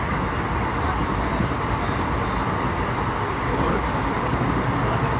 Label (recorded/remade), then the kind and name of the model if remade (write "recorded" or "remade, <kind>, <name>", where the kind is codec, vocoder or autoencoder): recorded